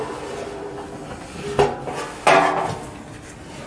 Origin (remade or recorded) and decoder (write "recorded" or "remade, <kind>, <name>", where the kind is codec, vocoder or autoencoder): recorded